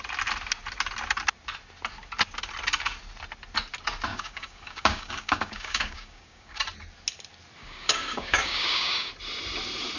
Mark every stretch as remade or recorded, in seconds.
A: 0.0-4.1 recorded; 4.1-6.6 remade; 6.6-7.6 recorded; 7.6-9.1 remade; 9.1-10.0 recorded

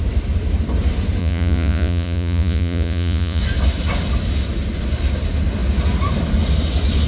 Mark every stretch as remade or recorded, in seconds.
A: 0.0-1.2 recorded; 1.2-3.4 remade; 3.4-7.1 recorded